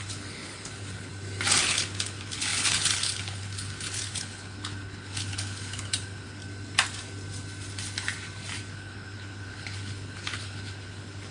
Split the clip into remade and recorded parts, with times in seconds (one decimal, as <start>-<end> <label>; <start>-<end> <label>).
0.0-1.1 remade; 1.1-1.6 recorded; 1.6-6.4 remade; 6.4-8.7 recorded; 8.7-11.3 remade